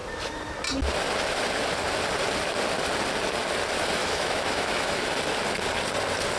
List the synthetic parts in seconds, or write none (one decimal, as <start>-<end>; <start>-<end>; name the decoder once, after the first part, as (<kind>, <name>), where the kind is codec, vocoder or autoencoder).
4.0-5.0 (autoencoder, DAC-VAE)